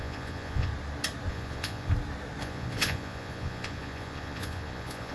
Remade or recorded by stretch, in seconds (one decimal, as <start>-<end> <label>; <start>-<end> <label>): 0.0-0.7 remade; 0.7-1.3 recorded; 1.3-1.9 remade; 1.9-2.4 recorded; 2.4-5.1 remade